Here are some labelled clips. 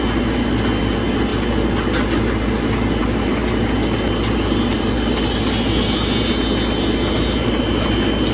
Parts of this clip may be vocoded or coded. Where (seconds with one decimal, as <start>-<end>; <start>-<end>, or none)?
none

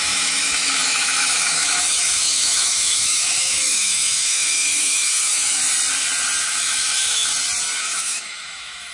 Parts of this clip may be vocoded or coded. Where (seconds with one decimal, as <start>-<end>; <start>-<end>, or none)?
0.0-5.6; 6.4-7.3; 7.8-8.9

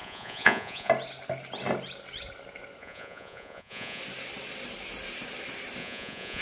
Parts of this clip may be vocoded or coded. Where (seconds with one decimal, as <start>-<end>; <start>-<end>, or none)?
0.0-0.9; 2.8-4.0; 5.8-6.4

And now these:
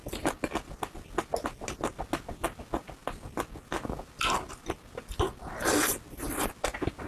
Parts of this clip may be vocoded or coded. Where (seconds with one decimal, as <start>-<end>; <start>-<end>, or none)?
none

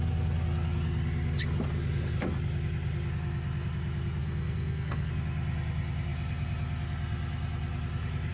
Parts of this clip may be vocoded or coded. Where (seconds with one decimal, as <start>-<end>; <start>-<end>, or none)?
4.2-5.1

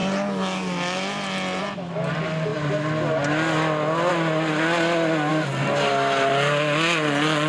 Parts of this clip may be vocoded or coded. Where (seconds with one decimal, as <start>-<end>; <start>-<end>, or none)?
none

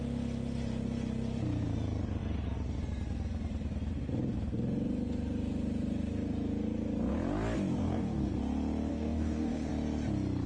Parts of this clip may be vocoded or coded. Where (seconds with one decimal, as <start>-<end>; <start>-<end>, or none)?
7.8-8.3; 8.9-9.7